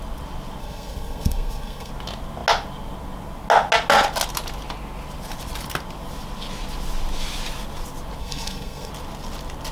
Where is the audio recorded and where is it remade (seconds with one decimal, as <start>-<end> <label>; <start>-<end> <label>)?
0.0-0.6 recorded; 0.6-1.9 remade; 1.9-8.2 recorded; 8.2-8.9 remade; 8.9-9.7 recorded